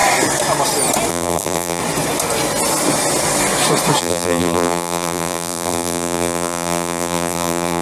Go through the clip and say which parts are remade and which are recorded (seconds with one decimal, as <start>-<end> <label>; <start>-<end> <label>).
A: 0.0-1.1 recorded; 1.1-1.8 remade; 1.8-4.0 recorded; 4.0-7.8 remade